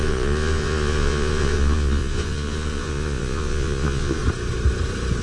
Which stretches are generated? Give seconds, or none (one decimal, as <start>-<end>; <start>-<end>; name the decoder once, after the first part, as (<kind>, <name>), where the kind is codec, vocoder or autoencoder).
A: 0.0-4.2 (vocoder, Vocos)